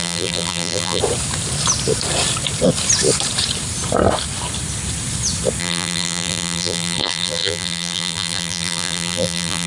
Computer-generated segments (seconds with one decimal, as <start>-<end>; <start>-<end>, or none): 0.0-1.0; 5.6-9.7